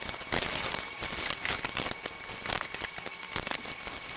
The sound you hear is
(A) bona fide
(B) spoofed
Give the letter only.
A